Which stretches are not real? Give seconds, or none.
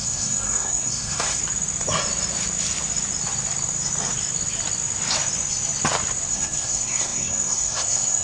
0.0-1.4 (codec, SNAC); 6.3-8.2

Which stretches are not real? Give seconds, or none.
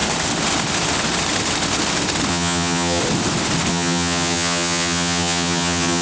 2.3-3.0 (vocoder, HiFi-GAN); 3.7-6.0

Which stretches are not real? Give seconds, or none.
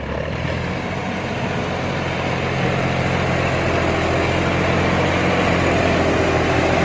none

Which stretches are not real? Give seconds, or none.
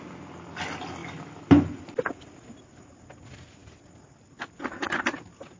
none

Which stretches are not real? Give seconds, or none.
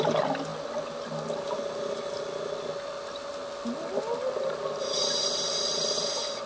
none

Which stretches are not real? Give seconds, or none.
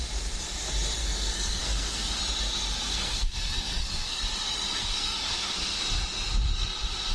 1.0-2.2 (codec, SNAC); 2.8-4.2; 4.8-5.8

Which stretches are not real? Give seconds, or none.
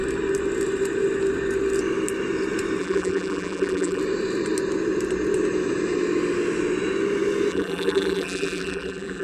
2.8-4.0 (vocoder, BigVGAN v2); 7.5-9.2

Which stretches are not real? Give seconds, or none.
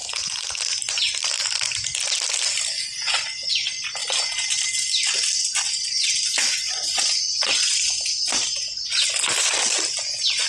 none